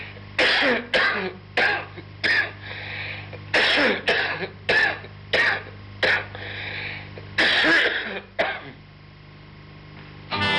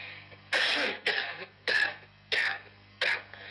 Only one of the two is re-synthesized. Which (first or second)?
second